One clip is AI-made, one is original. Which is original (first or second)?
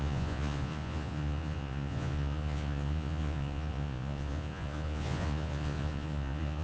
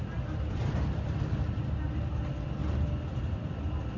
second